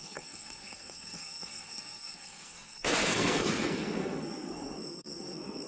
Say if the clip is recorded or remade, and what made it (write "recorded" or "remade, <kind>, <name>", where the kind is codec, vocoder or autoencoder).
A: remade, codec, SNAC